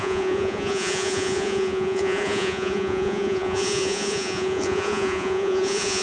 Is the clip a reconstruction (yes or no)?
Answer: yes